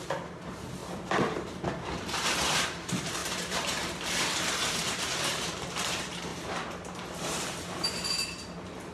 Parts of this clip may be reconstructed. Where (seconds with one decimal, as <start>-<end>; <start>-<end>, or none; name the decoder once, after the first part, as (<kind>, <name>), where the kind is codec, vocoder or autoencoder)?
0.0-0.8 (vocoder, BigVGAN v2); 2.6-8.9